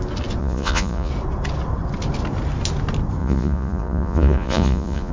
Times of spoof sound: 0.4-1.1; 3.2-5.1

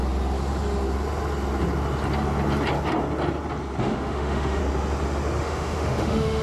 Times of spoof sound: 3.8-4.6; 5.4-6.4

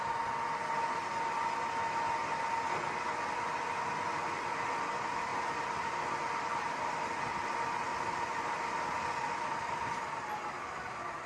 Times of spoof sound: 5.3-7.3; 7.9-10.1

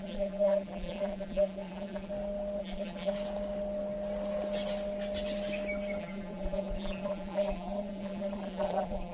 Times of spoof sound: 0.0-2.1; 2.6-3.1; 6.0-9.1

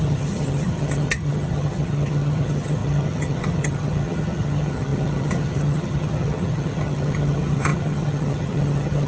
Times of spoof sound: 0.0-9.1

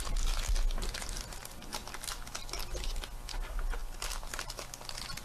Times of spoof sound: 3.8-4.3

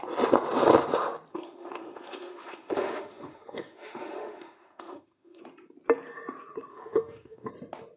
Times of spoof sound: 1.3-5.4; 6.7-7.5